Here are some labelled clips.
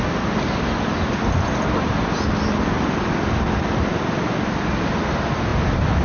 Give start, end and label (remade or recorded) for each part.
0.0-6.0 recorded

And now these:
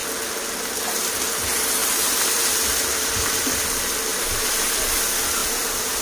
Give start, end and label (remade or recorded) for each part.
0.0-1.8 recorded; 1.8-2.4 remade; 2.4-5.4 recorded; 5.4-6.0 remade

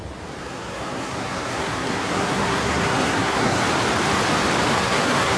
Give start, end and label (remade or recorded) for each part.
0.0-0.4 recorded; 0.4-3.6 remade; 3.6-4.8 recorded; 4.8-5.4 remade